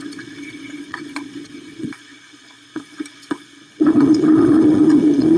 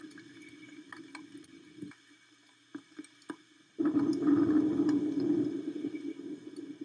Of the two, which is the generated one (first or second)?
first